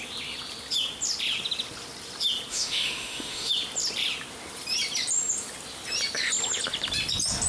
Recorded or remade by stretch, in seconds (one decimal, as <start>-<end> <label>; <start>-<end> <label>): 0.0-2.5 recorded; 2.5-3.5 remade; 3.5-7.5 recorded